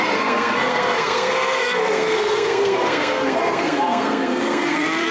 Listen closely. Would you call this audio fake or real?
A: fake